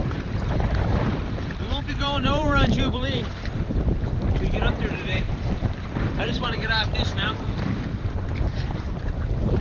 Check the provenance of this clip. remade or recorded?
remade